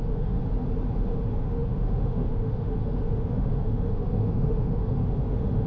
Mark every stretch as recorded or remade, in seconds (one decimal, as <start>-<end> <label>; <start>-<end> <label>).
0.0-0.4 remade; 0.4-0.9 recorded; 0.9-5.7 remade